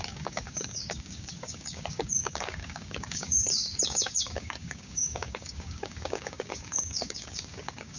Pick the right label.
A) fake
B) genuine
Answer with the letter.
A